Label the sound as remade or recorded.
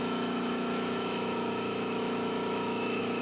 remade